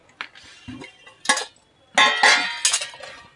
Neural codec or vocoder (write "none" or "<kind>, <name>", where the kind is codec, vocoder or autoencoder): none